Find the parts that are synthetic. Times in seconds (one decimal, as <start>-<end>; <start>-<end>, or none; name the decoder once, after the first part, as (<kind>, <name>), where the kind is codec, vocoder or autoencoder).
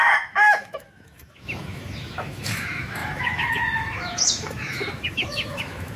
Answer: 0.0-6.0 (autoencoder, DAC-VAE)